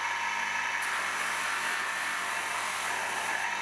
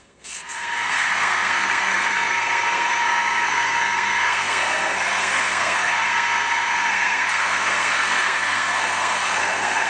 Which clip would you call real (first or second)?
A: first